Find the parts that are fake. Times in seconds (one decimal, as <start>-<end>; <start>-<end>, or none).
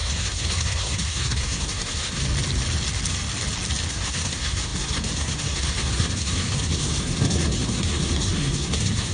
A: 0.0-2.2; 3.9-9.1